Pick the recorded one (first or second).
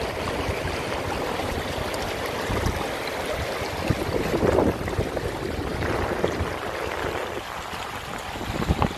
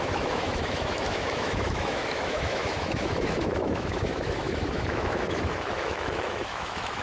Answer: first